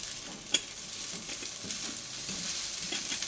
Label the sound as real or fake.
real